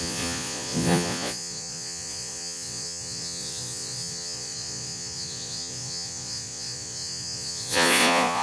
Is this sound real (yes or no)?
no